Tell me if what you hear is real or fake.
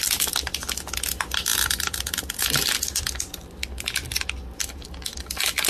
real